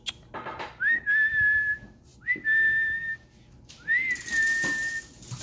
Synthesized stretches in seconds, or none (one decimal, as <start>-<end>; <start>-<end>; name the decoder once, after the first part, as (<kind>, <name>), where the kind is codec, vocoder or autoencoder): 0.5-1.4 (vocoder, BigVGAN v2)

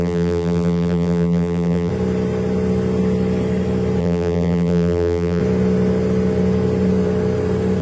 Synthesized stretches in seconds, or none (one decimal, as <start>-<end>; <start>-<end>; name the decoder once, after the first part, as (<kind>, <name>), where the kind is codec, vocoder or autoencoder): 0.0-1.9 (vocoder, BigVGAN v2); 4.0-5.4

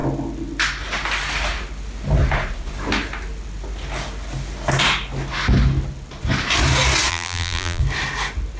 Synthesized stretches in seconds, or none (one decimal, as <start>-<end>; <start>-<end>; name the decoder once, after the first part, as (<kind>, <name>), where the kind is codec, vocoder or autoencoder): 7.1-7.8 (vocoder, BigVGAN v2)

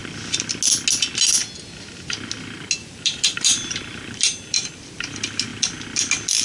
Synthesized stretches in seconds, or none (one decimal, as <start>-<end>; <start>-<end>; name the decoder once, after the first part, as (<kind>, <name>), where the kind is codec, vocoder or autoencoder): 2.8-4.7 (vocoder, BigVGAN v2)

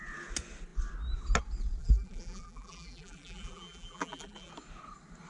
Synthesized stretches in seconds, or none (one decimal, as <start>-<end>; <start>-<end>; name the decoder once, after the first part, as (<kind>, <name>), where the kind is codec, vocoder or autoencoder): 1.8-4.5 (vocoder, BigVGAN v2)